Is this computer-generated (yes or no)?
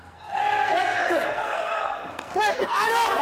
yes